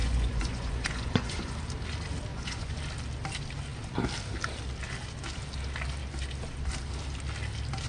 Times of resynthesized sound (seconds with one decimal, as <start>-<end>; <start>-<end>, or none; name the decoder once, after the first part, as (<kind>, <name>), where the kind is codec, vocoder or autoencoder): 0.0-1.6 (vocoder, Vocos); 2.3-2.8